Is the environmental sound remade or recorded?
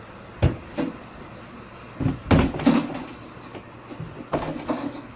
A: recorded